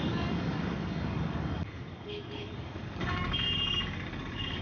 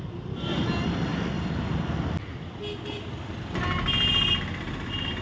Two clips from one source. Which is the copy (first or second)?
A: first